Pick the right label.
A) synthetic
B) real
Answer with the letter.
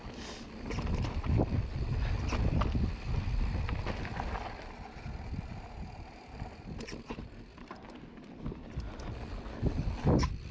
B